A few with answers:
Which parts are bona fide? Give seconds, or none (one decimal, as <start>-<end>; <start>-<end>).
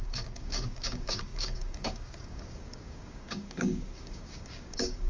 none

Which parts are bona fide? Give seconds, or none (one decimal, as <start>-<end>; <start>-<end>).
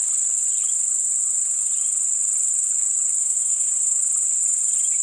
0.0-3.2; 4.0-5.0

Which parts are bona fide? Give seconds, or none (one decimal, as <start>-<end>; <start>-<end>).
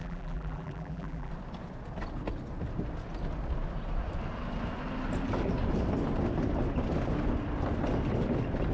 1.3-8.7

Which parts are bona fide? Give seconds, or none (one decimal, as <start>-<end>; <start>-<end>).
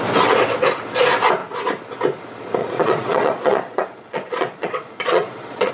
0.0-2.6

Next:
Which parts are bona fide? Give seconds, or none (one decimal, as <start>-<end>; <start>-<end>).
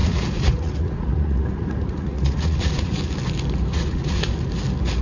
3.0-3.7; 4.3-5.0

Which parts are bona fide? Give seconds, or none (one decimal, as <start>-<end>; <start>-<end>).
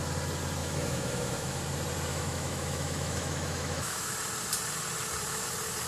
0.0-0.6; 1.6-2.1; 4.1-5.9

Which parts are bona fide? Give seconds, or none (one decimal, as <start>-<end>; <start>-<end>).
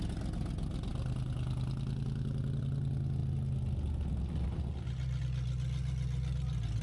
0.0-6.8